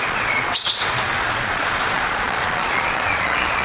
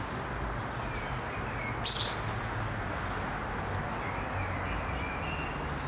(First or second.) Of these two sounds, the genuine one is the second